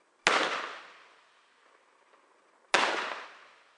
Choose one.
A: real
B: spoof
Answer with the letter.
A